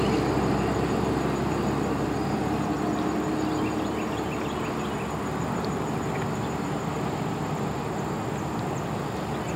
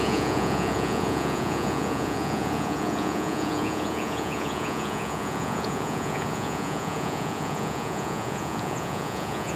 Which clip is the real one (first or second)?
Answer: first